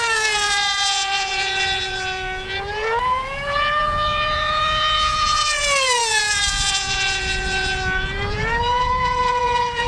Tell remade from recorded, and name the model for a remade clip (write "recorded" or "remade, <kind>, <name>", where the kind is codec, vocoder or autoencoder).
remade, vocoder, Vocos